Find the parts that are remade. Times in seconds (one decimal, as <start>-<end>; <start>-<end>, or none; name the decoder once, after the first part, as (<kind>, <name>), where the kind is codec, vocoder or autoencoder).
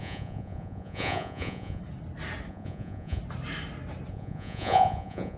0.0-1.8 (vocoder, Vocos); 2.5-3.2; 4.1-5.4